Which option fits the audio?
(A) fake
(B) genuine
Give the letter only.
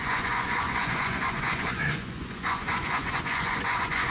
A